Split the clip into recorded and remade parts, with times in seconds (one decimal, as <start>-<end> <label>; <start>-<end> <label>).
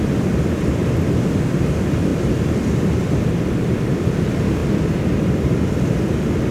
0.0-4.6 recorded; 4.6-5.5 remade; 5.5-6.5 recorded